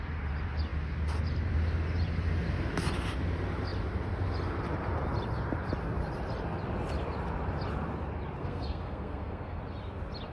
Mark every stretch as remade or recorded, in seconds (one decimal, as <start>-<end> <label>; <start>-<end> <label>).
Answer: 0.0-8.4 recorded; 8.4-9.6 remade; 9.6-10.3 recorded

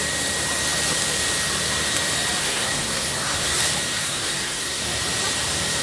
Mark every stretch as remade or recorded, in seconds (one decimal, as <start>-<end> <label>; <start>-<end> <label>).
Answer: 0.0-2.4 recorded; 2.4-3.6 remade; 3.6-4.0 recorded; 4.0-4.8 remade; 4.8-5.8 recorded

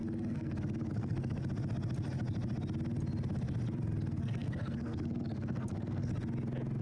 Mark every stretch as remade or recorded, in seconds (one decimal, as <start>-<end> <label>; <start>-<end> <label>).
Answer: 0.0-1.4 remade; 1.4-4.1 recorded; 4.1-6.1 remade; 6.1-6.8 recorded

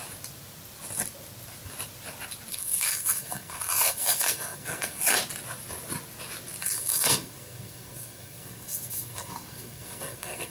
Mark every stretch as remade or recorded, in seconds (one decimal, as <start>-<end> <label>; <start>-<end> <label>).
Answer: 0.0-2.5 recorded; 2.5-5.0 remade; 5.0-6.6 recorded; 6.6-10.5 remade

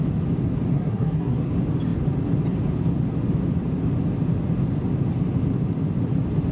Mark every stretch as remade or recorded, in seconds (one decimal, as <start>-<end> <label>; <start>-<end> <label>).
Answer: 0.0-0.7 recorded; 0.7-1.5 remade; 1.5-6.5 recorded

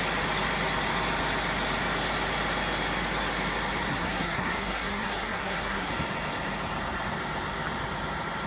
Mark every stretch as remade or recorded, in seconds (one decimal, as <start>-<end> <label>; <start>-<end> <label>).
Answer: 0.0-3.9 recorded; 3.9-5.9 remade; 5.9-8.5 recorded